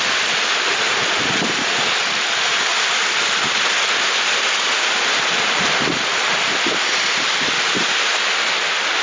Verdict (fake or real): real